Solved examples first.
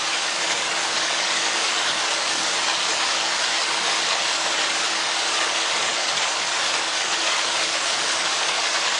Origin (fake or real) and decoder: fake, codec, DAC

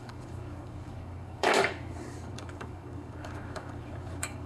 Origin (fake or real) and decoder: fake, codec, DAC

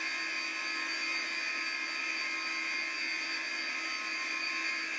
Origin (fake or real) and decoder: real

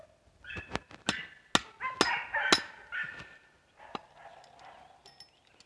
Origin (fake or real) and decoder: real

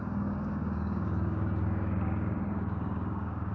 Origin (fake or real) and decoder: fake, codec, DAC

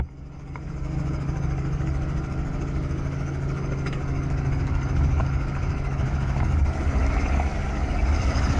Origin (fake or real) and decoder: fake, codec, DAC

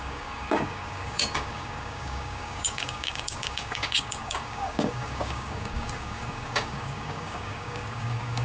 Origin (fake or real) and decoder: fake, codec, DAC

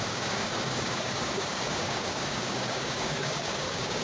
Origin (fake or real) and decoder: fake, codec, DAC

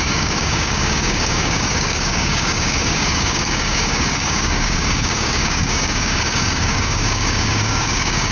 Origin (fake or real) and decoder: fake, codec, DAC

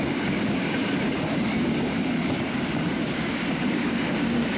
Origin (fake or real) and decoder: fake, codec, DAC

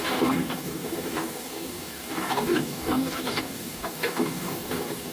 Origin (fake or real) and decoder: fake, codec, DAC